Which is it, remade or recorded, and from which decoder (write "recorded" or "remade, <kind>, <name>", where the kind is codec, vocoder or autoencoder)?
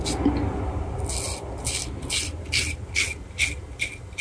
recorded